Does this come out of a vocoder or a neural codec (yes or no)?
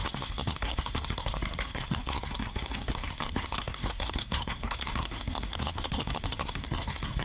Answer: yes